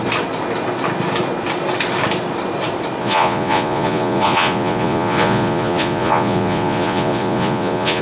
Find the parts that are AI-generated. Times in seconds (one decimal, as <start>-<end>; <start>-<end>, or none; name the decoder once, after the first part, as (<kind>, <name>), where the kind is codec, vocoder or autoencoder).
3.0-8.0 (vocoder, Vocos)